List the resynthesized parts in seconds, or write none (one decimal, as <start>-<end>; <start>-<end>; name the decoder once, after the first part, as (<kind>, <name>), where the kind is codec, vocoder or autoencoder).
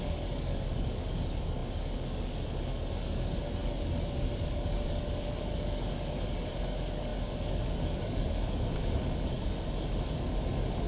0.0-10.9 (codec, DAC)